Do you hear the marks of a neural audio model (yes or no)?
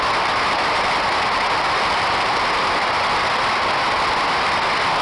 no